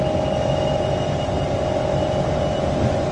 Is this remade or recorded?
recorded